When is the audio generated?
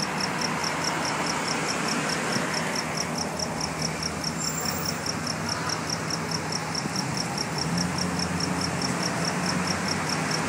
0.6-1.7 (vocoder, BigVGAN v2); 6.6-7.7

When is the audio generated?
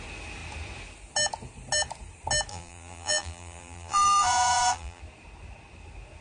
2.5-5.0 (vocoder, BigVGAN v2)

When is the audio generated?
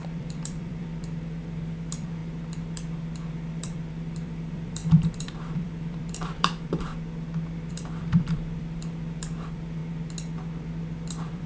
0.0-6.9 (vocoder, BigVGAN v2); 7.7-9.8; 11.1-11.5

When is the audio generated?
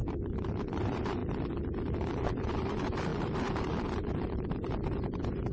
0.0-1.2 (vocoder, BigVGAN v2); 1.9-5.5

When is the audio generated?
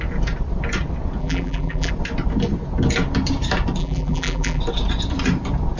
1.2-1.9 (vocoder, BigVGAN v2); 3.8-4.6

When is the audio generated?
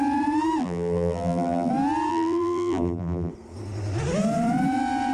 0.6-1.7 (vocoder, BigVGAN v2); 2.1-3.3